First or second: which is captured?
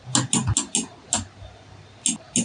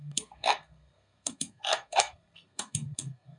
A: first